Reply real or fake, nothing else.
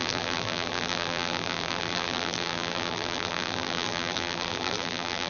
fake